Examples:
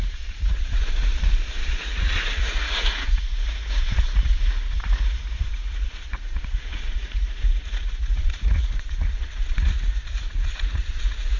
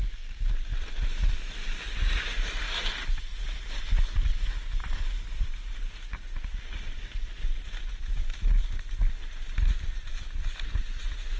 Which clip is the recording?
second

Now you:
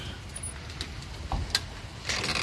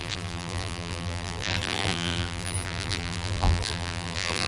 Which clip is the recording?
first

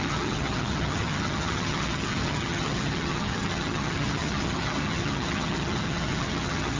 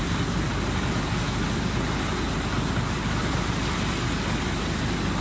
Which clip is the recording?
second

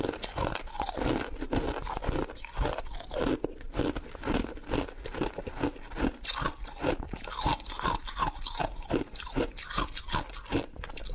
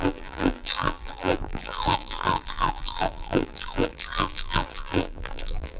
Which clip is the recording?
first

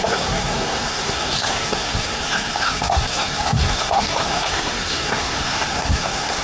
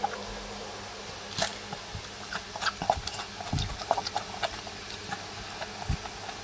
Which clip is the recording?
second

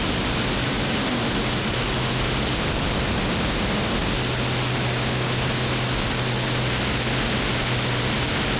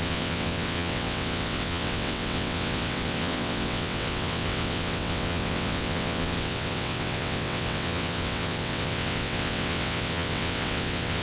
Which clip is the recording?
first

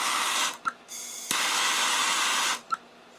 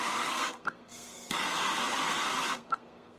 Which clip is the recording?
first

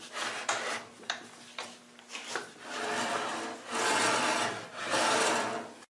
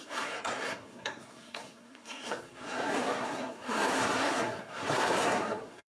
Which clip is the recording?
first